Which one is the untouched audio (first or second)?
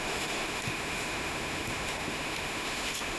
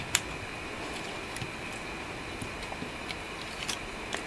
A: second